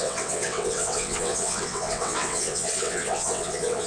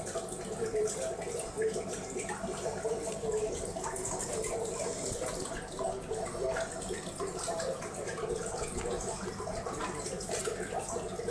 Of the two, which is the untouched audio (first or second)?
second